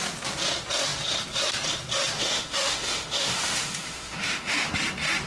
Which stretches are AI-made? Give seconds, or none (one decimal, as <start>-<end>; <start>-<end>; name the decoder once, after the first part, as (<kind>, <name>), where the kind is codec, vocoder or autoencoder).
2.2-4.7 (autoencoder, DAC-VAE)